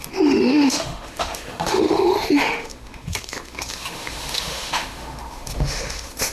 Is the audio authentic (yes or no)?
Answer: no